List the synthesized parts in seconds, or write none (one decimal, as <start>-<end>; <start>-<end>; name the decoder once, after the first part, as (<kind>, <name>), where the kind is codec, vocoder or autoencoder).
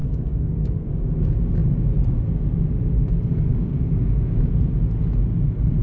0.0-0.9 (codec, DAC); 3.5-4.5